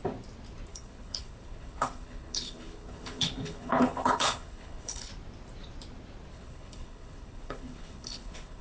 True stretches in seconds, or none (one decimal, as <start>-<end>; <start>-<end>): 0.0-0.7; 5.1-6.3